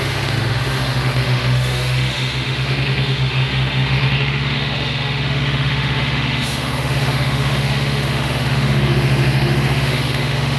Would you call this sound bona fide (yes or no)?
no